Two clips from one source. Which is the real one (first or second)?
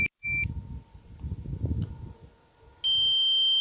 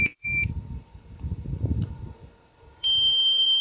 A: first